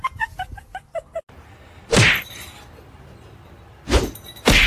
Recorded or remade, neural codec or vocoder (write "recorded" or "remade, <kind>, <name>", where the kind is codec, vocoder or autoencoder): recorded